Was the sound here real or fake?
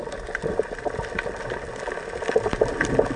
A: real